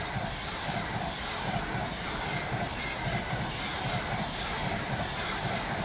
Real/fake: fake